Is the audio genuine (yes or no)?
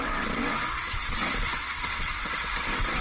no